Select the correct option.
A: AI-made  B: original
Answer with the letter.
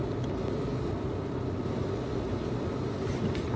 A